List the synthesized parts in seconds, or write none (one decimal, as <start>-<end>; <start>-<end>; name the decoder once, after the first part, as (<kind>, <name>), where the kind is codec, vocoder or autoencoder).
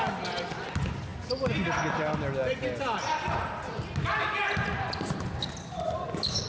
none